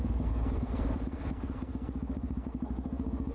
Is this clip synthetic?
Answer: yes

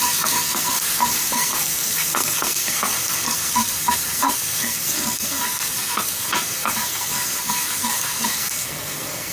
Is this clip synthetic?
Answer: yes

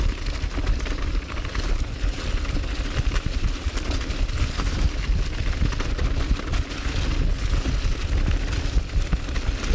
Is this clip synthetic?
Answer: no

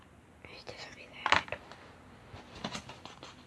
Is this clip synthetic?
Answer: no